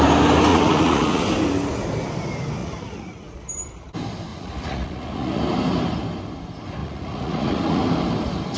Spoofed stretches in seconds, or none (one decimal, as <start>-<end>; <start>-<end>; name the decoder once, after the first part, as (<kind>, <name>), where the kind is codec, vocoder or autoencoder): 0.5-1.2 (vocoder, Vocos); 2.6-3.4; 4.3-5.4; 6.8-7.8

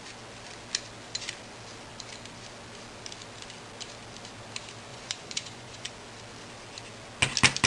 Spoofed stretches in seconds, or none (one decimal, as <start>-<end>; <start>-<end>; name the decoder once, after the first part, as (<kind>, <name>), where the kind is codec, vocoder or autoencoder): 4.9-5.9 (vocoder, Vocos)

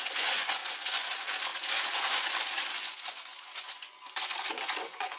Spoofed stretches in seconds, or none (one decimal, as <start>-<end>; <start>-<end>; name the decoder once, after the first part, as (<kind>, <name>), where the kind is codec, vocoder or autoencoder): 0.0-5.2 (vocoder, Vocos)

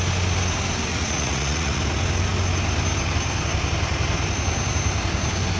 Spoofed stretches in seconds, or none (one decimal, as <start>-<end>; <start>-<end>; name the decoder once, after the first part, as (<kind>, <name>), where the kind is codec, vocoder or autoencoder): 0.9-1.8 (vocoder, Vocos)